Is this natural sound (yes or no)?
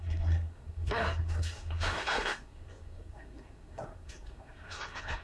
no